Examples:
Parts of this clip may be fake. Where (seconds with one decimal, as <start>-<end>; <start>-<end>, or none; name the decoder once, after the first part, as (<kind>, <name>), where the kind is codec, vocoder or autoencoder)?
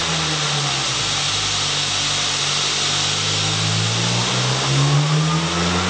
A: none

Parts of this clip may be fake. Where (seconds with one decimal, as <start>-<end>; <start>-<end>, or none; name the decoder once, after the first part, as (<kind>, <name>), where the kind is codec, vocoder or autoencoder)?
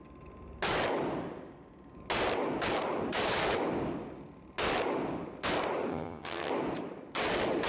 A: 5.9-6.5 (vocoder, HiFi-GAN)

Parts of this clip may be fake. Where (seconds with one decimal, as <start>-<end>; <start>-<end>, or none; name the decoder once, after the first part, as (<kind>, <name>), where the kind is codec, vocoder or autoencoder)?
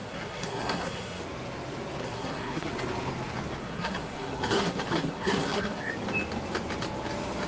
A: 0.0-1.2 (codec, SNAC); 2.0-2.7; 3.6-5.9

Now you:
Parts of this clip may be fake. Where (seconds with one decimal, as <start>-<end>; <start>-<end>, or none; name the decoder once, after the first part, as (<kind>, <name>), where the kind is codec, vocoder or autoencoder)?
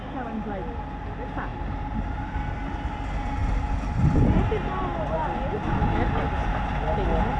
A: none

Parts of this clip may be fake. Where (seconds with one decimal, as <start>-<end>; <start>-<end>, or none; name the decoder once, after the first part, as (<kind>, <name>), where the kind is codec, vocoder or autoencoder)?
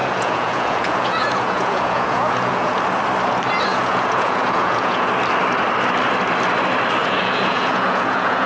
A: 0.0-2.8 (vocoder, Vocos); 3.7-5.1; 7.0-8.5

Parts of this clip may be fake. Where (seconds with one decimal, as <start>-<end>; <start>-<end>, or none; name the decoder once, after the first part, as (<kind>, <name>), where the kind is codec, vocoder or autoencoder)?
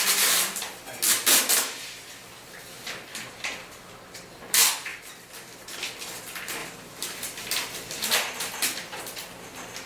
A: 3.1-3.9 (vocoder, BigVGAN v2); 4.9-5.7; 6.6-9.0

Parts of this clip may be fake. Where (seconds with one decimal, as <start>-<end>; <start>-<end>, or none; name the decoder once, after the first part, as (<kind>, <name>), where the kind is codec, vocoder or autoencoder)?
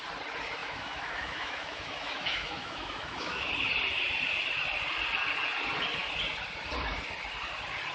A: 0.6-3.5 (autoencoder, DAC-VAE)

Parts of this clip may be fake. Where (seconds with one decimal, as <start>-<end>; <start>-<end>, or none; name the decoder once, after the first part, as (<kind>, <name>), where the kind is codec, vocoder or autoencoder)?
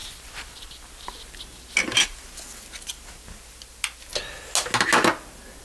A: none